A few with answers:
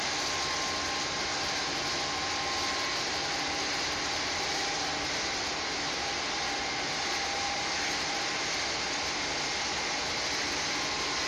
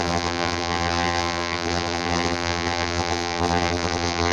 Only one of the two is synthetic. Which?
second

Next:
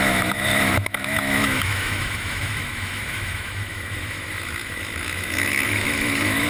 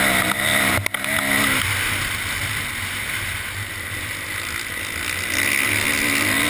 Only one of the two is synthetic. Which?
first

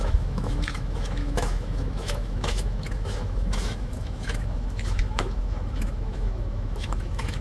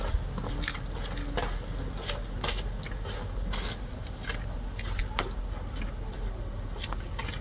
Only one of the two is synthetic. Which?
first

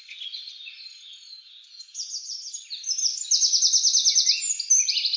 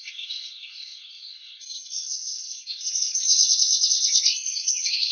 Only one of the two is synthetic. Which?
second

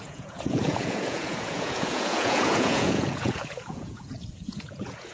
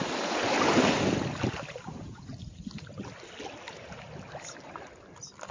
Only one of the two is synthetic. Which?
first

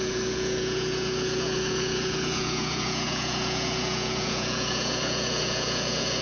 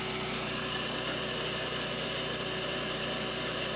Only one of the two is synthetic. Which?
first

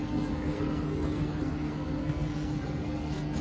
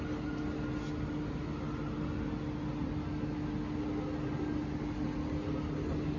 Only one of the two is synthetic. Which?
first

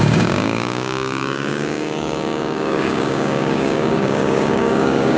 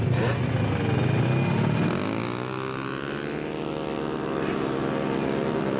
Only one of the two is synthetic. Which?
first